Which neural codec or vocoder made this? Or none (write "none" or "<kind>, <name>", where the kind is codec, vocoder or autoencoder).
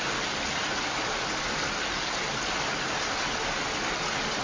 none